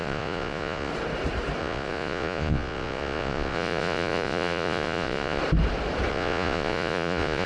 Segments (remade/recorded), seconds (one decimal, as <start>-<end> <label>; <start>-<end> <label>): 0.0-0.9 remade; 0.9-1.6 recorded; 1.6-5.4 remade; 5.4-6.1 recorded; 6.1-7.5 remade